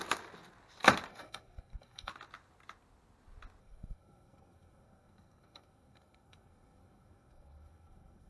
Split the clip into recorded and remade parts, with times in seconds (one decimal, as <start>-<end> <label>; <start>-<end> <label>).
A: 0.0-1.1 recorded; 1.1-2.1 remade; 2.1-3.6 recorded; 3.6-8.3 remade